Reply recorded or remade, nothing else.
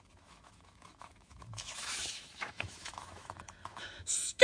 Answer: remade